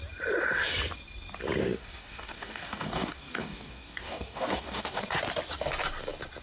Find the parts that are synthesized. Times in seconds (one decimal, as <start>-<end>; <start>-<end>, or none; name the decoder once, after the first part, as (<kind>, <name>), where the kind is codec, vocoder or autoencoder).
1.6-5.0 (codec, DAC)